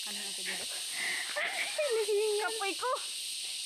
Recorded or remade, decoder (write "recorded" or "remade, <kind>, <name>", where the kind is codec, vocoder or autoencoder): recorded